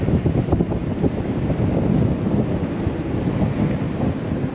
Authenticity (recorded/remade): recorded